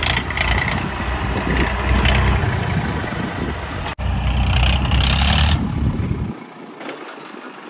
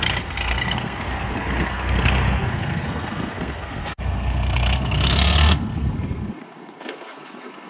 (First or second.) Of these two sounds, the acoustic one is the first